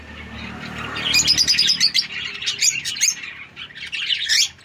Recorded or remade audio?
recorded